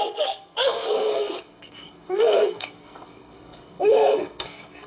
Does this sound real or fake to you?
fake